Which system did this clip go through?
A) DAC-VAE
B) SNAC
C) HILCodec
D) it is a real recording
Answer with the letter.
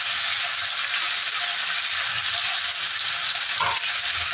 D